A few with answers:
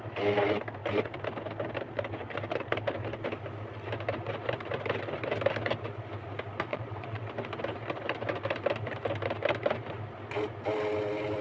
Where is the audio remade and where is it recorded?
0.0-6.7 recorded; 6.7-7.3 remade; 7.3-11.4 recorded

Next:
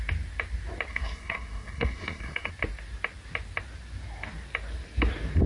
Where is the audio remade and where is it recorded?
0.0-0.9 recorded; 0.9-2.5 remade; 2.5-5.5 recorded

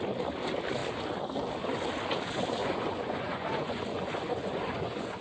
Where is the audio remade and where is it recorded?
0.0-2.6 recorded; 2.6-5.2 remade

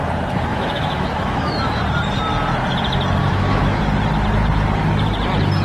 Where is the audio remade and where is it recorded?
0.0-0.5 recorded; 0.5-1.8 remade; 1.8-3.2 recorded; 3.2-3.8 remade; 3.8-5.6 recorded